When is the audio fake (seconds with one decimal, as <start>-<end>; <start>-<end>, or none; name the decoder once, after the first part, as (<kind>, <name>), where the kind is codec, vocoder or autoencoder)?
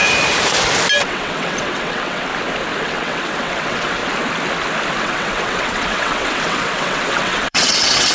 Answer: 1.0-2.3 (vocoder, WaveNeXt); 2.8-4.0; 5.0-8.1